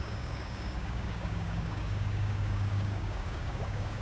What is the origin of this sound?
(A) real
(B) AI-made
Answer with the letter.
B